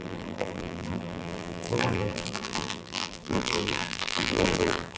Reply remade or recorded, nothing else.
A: remade